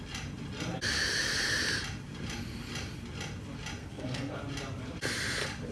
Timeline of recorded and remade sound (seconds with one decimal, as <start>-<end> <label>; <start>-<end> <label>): 0.0-3.8 recorded; 3.8-4.4 remade; 4.4-5.7 recorded